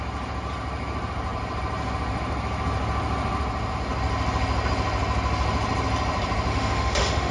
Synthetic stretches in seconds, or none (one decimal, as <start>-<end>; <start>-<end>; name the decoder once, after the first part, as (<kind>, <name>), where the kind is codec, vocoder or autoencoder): 6.5-7.3 (autoencoder, DAC-VAE)